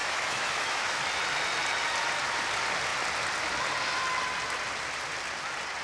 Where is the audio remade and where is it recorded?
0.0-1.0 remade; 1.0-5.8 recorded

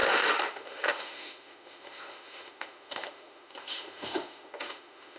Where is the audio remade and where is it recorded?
0.0-5.2 remade

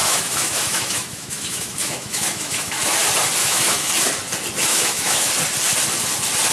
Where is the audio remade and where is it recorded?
0.0-2.9 remade; 2.9-3.4 recorded; 3.4-3.9 remade; 3.9-4.7 recorded; 4.7-5.3 remade; 5.3-6.5 recorded

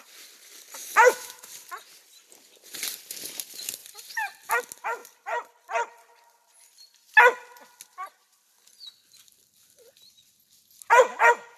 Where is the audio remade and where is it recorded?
0.0-0.8 recorded; 0.8-1.5 remade; 1.5-11.6 recorded

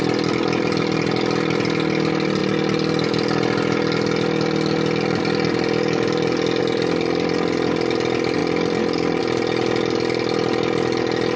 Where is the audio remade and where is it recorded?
0.0-11.4 recorded

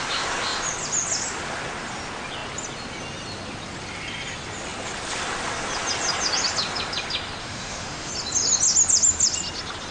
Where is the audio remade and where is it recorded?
0.0-7.4 recorded; 7.4-8.1 remade; 8.1-9.9 recorded

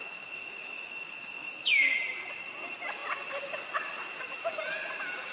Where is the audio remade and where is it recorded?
0.0-2.0 remade; 2.0-5.3 recorded